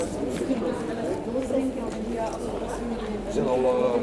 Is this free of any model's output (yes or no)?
no